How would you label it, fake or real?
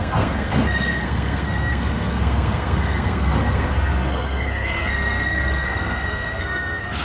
fake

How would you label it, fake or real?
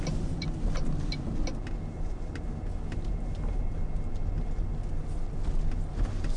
real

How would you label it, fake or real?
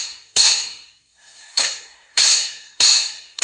fake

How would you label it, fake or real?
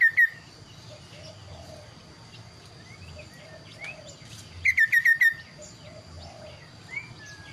real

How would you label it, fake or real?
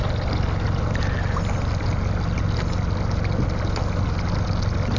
real